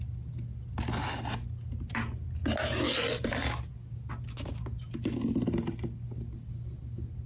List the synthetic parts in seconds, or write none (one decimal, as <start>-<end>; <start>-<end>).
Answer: none